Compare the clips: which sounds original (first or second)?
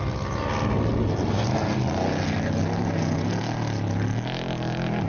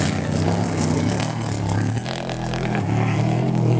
first